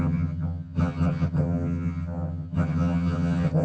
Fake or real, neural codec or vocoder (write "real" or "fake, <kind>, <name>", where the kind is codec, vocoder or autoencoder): fake, vocoder, HiFi-GAN